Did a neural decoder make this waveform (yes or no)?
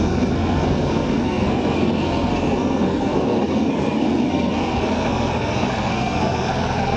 yes